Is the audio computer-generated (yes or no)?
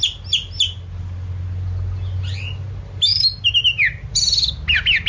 no